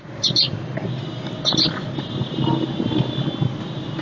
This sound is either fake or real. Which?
real